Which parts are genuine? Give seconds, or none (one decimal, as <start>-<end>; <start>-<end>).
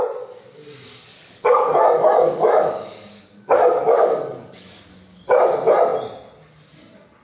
0.0-1.1; 5.4-7.2